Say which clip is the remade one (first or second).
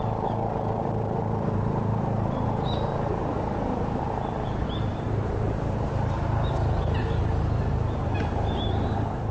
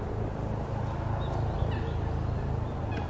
first